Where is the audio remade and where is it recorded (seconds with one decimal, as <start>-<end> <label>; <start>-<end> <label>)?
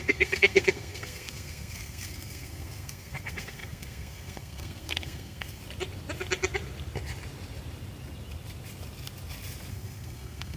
0.0-5.6 remade; 5.6-9.7 recorded; 9.7-10.6 remade